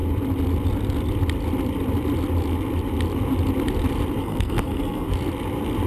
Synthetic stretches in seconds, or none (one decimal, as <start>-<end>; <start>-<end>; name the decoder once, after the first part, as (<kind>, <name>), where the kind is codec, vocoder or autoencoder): 4.2-5.1 (codec, SNAC)